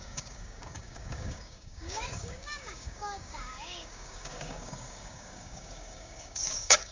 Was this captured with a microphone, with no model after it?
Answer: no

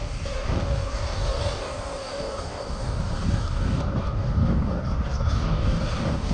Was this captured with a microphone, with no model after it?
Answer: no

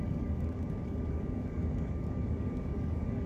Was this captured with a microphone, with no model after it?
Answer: no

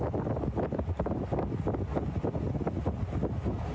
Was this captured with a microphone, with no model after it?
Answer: yes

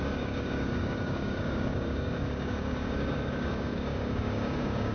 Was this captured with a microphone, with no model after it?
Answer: no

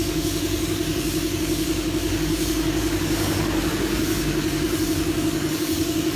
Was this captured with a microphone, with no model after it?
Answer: no